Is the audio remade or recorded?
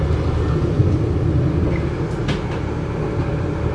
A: recorded